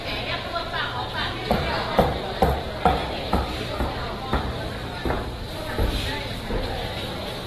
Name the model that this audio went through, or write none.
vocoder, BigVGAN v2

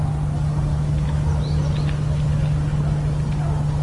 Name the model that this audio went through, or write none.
none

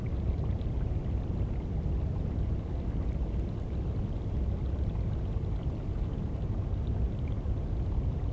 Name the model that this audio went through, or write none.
none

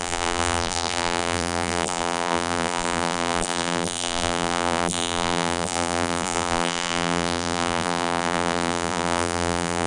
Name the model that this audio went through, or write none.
vocoder, BigVGAN v2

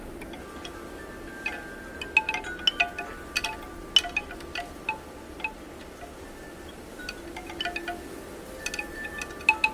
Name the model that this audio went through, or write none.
none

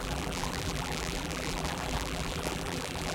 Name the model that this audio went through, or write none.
vocoder, BigVGAN v2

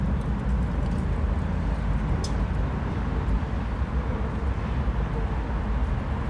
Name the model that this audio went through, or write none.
none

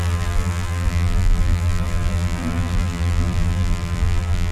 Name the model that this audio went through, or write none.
vocoder, BigVGAN v2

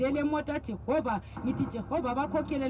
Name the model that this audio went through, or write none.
none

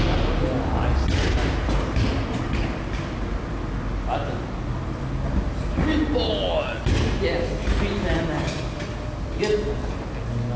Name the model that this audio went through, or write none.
none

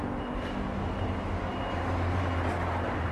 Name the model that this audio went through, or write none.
none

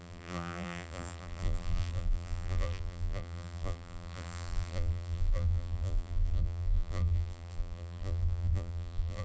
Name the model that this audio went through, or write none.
vocoder, BigVGAN v2